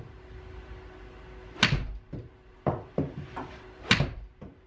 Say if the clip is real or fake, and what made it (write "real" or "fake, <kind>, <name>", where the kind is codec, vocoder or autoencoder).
real